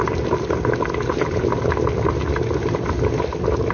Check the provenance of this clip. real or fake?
real